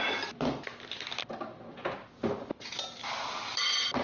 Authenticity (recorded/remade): recorded